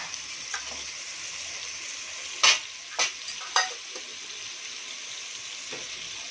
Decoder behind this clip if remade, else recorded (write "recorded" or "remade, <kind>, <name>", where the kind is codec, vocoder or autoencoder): recorded